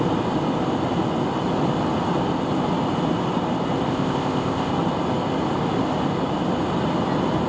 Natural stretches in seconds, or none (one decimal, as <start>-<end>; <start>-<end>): 0.0-3.9; 4.7-7.5